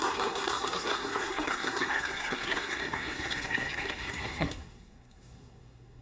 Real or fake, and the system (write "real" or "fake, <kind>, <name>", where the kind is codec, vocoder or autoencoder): fake, codec, SNAC